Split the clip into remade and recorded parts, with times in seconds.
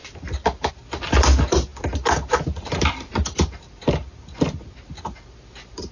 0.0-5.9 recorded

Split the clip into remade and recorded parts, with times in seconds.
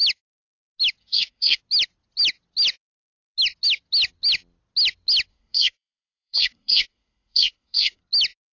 0.0-1.0 recorded; 1.0-1.6 remade; 1.6-5.3 recorded; 5.3-8.0 remade; 8.0-8.5 recorded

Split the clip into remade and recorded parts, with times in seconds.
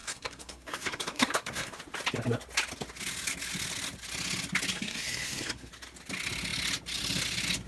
0.0-1.8 remade; 1.8-4.7 recorded; 4.7-5.7 remade; 5.7-7.7 recorded